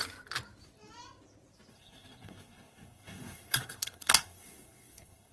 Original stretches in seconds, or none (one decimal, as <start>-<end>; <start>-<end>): 0.0-1.7